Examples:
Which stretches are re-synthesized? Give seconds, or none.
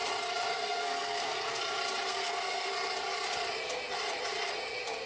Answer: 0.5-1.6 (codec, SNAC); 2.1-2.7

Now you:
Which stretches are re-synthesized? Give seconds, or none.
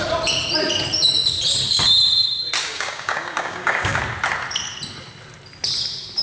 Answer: 2.6-4.0 (codec, DAC)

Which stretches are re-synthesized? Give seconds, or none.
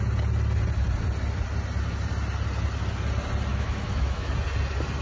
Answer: 3.5-4.3 (autoencoder, DAC-VAE)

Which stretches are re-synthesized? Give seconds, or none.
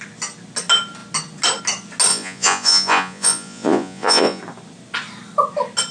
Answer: 2.1-4.4 (vocoder, Vocos)